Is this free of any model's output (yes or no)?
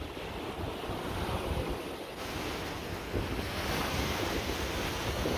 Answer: yes